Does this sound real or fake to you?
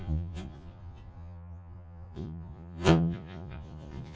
fake